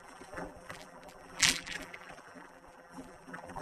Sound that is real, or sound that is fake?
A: fake